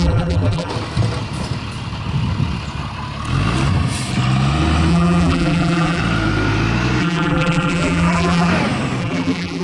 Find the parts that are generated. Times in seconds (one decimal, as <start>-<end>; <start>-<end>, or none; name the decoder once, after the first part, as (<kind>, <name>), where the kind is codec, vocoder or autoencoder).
0.0-0.7 (vocoder, BigVGAN v2); 4.9-6.0; 7.0-8.5; 9.0-9.6